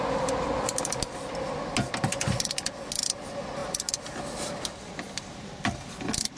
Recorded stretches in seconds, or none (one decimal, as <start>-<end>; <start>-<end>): 0.0-6.4